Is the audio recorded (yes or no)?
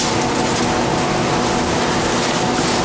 yes